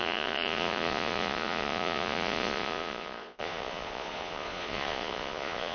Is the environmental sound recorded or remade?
remade